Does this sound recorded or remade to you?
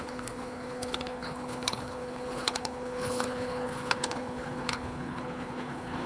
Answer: remade